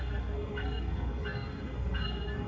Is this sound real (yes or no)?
no